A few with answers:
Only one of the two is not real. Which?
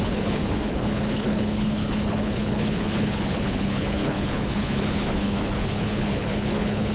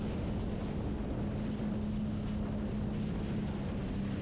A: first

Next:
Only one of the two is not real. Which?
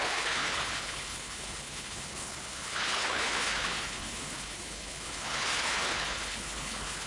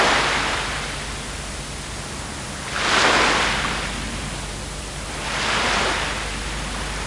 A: first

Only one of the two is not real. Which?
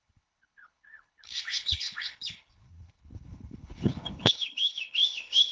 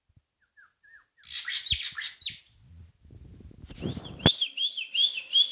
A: first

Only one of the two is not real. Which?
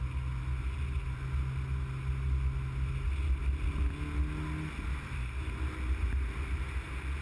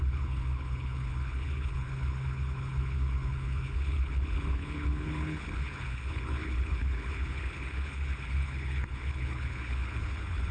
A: second